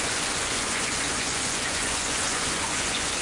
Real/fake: fake